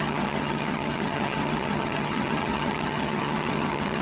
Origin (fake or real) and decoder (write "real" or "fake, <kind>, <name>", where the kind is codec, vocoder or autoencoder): fake, vocoder, HiFi-GAN